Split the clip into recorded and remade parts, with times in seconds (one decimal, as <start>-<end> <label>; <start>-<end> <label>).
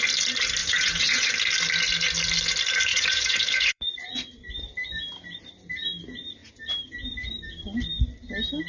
0.0-0.6 recorded; 0.6-1.3 remade; 1.3-2.9 recorded; 2.9-4.4 remade; 4.4-8.7 recorded